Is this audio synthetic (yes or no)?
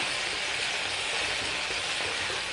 no